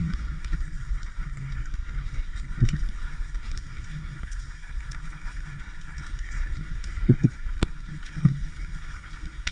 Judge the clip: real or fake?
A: fake